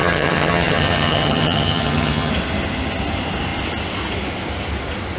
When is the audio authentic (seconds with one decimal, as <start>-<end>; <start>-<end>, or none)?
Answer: 2.3-5.2

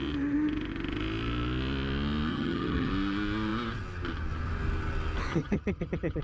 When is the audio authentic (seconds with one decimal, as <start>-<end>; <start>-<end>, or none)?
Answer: 0.0-2.3; 2.9-5.3

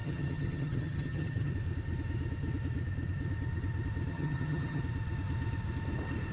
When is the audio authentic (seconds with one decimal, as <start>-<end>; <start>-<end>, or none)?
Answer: 1.5-4.1; 4.8-6.3

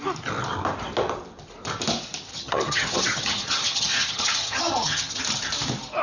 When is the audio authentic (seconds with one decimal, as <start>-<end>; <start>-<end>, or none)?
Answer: 0.0-2.3; 5.2-6.0

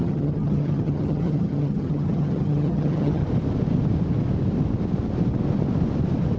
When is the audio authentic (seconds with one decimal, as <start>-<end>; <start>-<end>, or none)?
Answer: 3.2-6.4

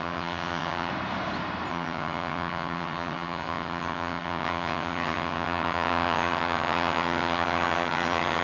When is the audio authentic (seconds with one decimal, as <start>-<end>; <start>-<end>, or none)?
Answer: 0.9-1.7